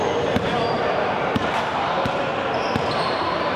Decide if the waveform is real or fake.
fake